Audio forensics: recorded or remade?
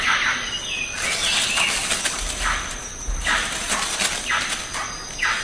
recorded